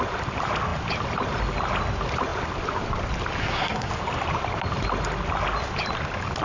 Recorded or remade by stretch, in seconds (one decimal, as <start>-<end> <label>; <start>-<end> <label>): 0.0-3.4 recorded; 3.4-3.9 remade; 3.9-6.4 recorded